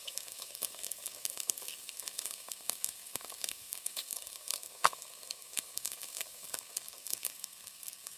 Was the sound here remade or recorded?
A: remade